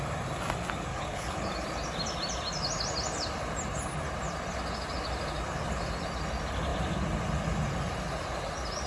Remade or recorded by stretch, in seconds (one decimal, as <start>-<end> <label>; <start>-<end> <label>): 0.0-0.9 recorded; 0.9-1.5 remade; 1.5-8.9 recorded